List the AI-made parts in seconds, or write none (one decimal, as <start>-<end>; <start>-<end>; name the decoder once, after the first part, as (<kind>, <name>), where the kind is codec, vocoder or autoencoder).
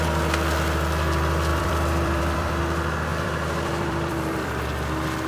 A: 1.5-2.6 (vocoder, BigVGAN v2); 3.1-4.5